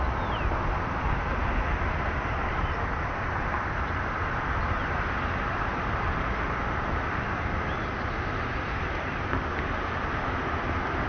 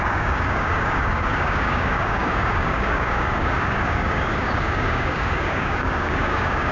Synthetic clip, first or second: second